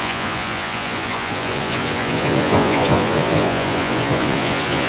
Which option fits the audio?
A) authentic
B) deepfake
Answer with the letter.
B